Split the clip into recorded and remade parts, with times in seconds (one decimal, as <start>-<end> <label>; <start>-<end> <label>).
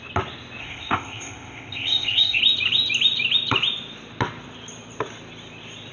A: 0.0-0.6 recorded; 0.6-2.4 remade; 2.4-5.9 recorded